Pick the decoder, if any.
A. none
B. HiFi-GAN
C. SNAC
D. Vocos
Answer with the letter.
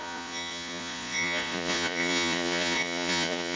D